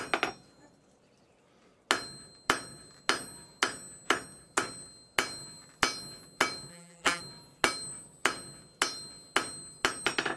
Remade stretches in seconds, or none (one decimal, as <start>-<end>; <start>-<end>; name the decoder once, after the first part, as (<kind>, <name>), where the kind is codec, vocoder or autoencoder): 6.7-7.2 (vocoder, BigVGAN v2)